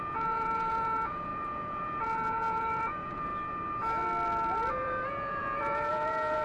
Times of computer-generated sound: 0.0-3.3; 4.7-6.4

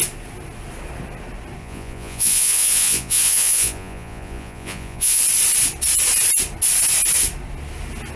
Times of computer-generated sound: 1.6-5.2

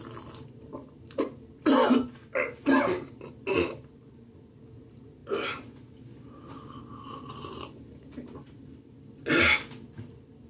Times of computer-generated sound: none

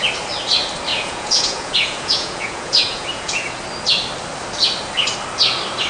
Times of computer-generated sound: 0.9-3.5

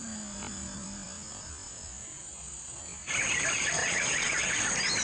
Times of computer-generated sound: 2.2-2.8; 3.8-4.5

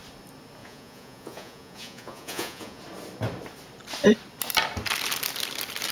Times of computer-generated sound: 0.6-2.8